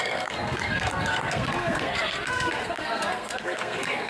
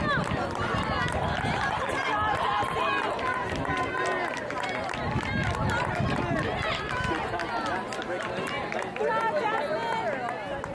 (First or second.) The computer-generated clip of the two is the first